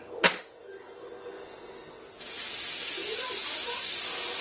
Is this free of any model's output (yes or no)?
yes